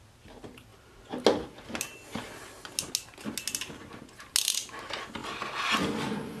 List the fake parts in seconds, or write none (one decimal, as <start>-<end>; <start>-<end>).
none